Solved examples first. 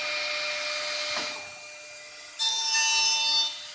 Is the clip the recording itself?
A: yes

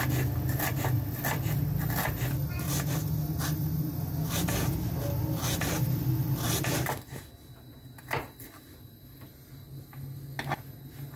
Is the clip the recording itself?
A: yes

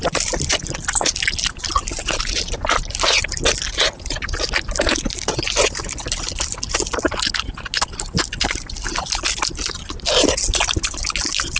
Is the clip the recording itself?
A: yes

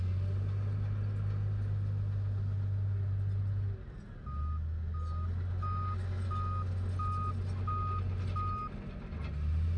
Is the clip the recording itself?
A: yes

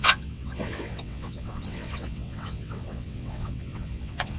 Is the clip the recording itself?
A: no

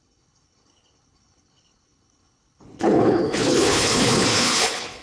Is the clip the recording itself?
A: no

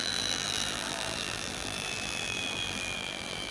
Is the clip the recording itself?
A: no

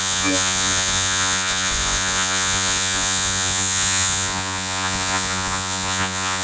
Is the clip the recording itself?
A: no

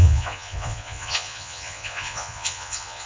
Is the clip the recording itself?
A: no